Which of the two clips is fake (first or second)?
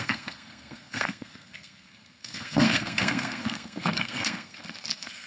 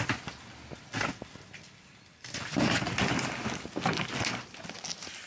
first